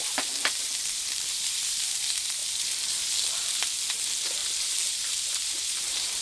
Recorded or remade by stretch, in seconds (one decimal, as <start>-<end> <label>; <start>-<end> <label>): 0.0-2.4 remade; 2.4-3.9 recorded; 3.9-6.2 remade